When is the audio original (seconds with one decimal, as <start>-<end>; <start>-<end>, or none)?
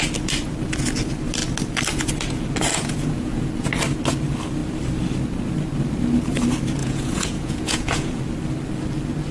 0.0-2.7; 3.5-6.8; 8.2-9.3